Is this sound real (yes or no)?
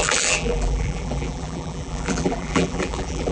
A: no